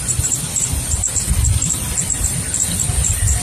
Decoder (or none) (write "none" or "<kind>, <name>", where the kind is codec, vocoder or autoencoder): none